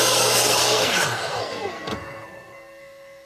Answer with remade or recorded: remade